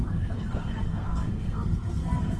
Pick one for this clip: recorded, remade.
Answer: remade